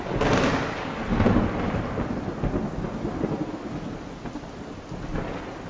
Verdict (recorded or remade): recorded